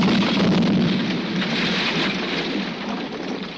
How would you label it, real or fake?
real